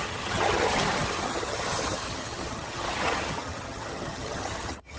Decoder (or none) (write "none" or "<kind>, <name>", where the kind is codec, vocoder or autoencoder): vocoder, HiFi-GAN